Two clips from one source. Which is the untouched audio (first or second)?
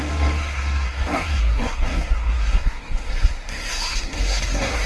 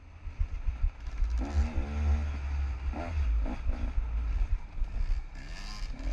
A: second